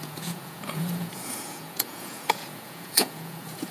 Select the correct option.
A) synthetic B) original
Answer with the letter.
A